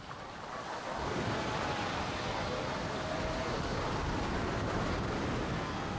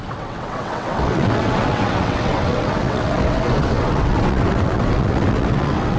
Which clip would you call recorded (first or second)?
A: first